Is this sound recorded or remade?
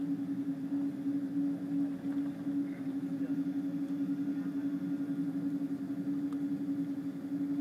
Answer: recorded